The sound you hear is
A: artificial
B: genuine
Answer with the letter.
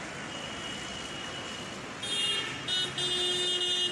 B